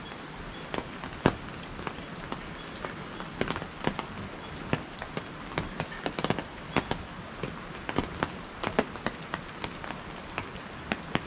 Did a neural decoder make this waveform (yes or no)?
no